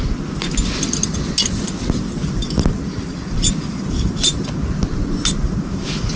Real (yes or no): yes